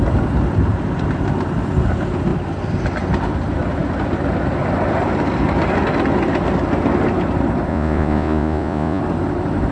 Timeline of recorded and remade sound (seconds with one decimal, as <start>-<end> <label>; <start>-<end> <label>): 0.0-7.7 recorded; 7.7-9.0 remade; 9.0-9.7 recorded